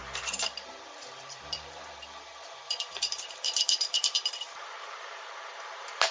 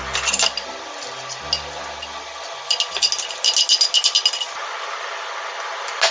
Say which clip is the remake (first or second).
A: first